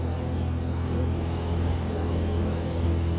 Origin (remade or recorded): remade